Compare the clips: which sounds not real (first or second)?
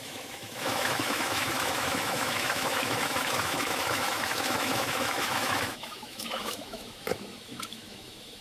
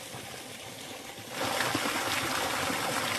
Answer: first